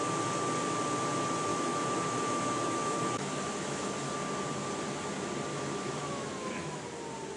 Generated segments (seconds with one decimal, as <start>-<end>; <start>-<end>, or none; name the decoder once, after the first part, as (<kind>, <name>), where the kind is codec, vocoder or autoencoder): 1.5-3.9 (autoencoder, DAC-VAE); 5.5-6.8